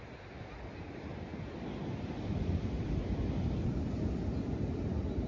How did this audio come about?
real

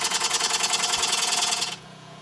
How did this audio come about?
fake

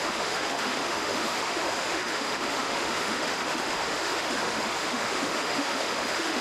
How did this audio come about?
fake